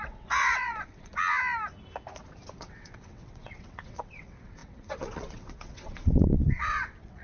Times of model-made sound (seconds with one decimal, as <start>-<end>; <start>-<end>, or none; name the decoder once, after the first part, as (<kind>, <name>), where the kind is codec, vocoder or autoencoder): 0.0-1.1 (vocoder, WaveNeXt); 2.6-7.2